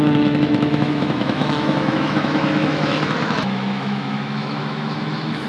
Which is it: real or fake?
fake